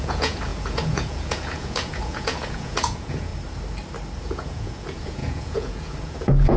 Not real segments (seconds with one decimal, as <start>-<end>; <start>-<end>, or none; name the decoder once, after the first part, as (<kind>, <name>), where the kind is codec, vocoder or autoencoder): 0.0-3.3 (vocoder, Vocos); 4.2-6.6